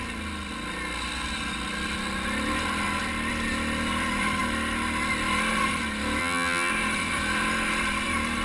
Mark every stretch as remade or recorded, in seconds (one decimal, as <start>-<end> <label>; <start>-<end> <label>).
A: 0.0-6.2 recorded; 6.2-6.7 remade; 6.7-8.4 recorded